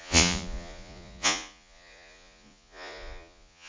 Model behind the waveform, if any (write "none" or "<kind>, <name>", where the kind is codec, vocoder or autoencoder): vocoder, Vocos